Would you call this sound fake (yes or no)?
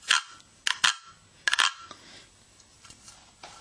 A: no